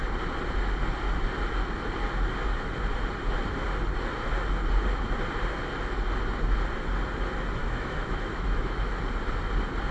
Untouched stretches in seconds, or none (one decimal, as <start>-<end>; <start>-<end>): 0.0-7.6; 9.0-9.9